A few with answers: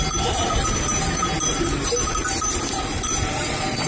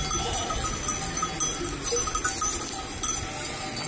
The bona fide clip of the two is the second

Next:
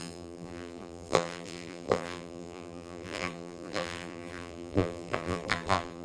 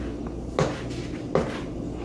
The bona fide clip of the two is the second